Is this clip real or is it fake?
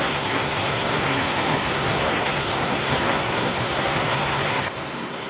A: fake